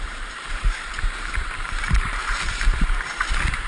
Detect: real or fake fake